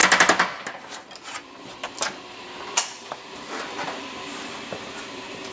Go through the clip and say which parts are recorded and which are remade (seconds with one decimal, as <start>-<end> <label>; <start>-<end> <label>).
0.0-3.3 recorded; 3.3-5.5 remade

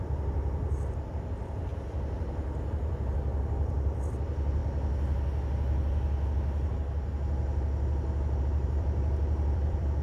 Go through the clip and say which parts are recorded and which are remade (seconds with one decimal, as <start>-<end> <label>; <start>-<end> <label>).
0.0-1.7 remade; 1.7-3.1 recorded; 3.1-4.6 remade; 4.6-8.4 recorded; 8.4-10.0 remade

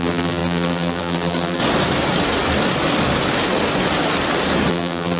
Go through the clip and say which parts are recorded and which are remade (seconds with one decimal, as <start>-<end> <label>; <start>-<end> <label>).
0.0-1.6 remade; 1.6-4.7 recorded; 4.7-5.2 remade